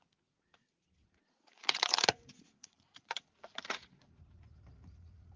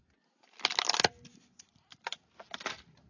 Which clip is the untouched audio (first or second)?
second